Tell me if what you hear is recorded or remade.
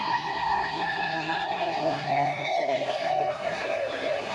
remade